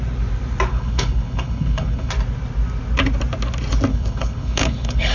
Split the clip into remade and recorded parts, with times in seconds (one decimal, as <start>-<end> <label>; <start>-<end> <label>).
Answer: 0.0-0.7 recorded; 0.7-2.1 remade; 2.1-3.9 recorded; 3.9-5.1 remade